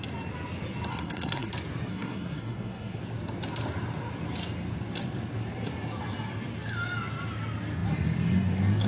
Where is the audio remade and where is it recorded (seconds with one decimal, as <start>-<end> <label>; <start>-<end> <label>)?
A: 0.0-0.9 recorded; 0.9-1.5 remade; 1.5-1.9 recorded; 1.9-3.0 remade; 3.0-8.9 recorded